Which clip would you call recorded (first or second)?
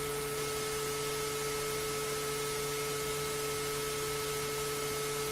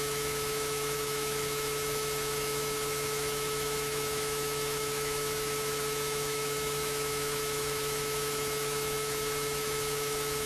first